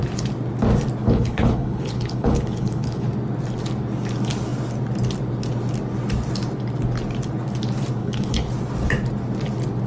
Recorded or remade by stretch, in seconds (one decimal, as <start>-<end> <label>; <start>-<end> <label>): 0.0-1.0 recorded; 1.0-3.1 remade; 3.1-8.0 recorded; 8.0-8.5 remade; 8.5-9.9 recorded

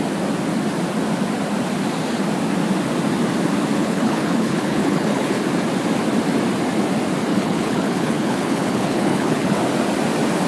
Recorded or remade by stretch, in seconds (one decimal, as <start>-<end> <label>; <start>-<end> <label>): 0.0-3.8 recorded; 3.8-5.4 remade; 5.4-7.3 recorded; 7.3-9.6 remade; 9.6-10.5 recorded

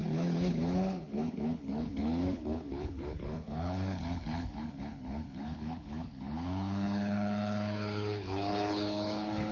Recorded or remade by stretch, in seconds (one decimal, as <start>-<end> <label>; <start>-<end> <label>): 0.0-9.5 remade

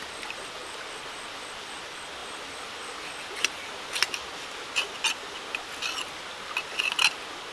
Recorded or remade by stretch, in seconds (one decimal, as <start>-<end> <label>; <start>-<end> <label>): 0.0-7.5 recorded

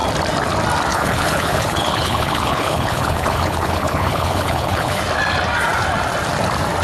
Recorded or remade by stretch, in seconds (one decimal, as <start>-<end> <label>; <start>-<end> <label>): 0.0-0.9 recorded; 0.9-5.0 remade; 5.0-6.8 recorded

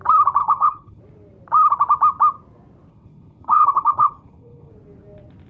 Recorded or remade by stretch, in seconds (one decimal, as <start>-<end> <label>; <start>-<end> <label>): 0.0-0.4 recorded; 0.4-1.0 remade; 1.0-2.9 recorded; 2.9-4.7 remade; 4.7-5.5 recorded

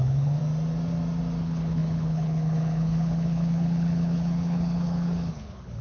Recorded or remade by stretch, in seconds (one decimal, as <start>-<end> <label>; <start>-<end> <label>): 0.0-0.4 remade; 0.4-1.4 recorded; 1.4-5.8 remade

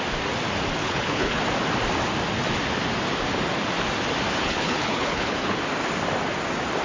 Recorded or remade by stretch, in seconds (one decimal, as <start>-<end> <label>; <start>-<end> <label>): 0.0-0.8 recorded; 0.8-1.4 remade; 1.4-4.4 recorded; 4.4-5.6 remade; 5.6-6.8 recorded